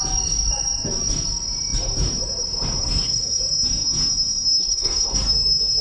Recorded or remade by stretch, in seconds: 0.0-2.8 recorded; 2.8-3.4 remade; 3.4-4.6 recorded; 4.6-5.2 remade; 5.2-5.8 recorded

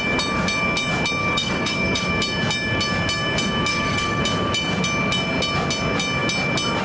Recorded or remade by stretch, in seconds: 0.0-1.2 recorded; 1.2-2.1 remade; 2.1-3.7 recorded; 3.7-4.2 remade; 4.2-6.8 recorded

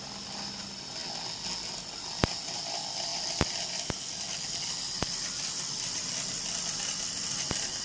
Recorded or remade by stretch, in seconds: 0.0-1.0 remade; 1.0-2.5 recorded; 2.5-3.1 remade; 3.1-4.8 recorded; 4.8-7.8 remade

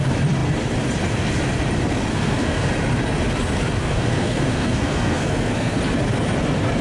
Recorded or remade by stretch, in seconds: 0.0-2.1 recorded; 2.1-2.7 remade; 2.7-3.8 recorded; 3.8-5.8 remade; 5.8-6.8 recorded